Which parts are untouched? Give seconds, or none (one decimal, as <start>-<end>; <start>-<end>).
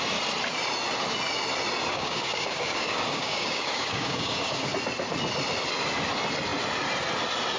0.0-1.9; 4.7-7.6